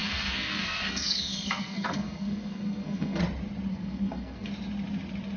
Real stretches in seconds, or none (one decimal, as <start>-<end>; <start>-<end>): 3.2-3.7; 4.5-5.4